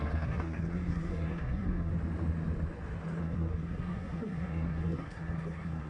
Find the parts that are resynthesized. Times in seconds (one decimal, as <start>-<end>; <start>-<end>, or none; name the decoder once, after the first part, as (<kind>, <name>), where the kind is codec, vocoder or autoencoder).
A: 0.0-1.9 (codec, SNAC); 3.2-5.9